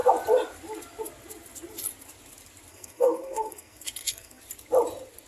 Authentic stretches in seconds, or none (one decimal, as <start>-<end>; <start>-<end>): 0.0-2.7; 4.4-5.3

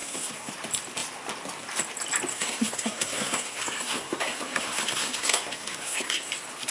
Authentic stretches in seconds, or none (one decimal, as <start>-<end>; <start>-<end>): 0.5-2.3; 6.3-6.7

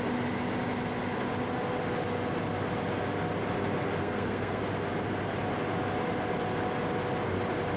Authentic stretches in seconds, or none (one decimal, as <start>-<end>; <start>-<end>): 0.0-4.0; 4.6-7.8